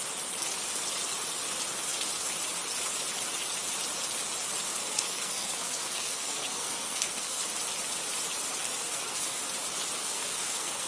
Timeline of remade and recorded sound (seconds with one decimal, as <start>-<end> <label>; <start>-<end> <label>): 0.0-4.8 recorded; 4.8-7.4 remade; 7.4-8.5 recorded; 8.5-9.4 remade; 9.4-10.0 recorded; 10.0-10.9 remade